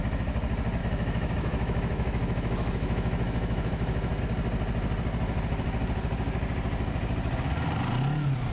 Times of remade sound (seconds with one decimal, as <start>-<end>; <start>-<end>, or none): 0.8-4.2